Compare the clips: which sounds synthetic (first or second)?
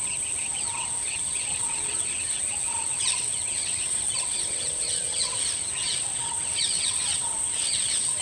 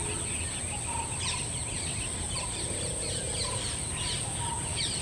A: first